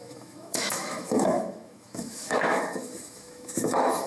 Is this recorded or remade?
remade